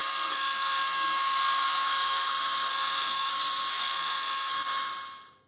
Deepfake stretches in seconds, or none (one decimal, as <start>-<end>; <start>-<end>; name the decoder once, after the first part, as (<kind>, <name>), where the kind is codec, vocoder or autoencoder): 0.0-2.3 (codec, SNAC); 2.7-3.3; 3.7-4.5